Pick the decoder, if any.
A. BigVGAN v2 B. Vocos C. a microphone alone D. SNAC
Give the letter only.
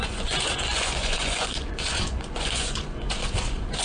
B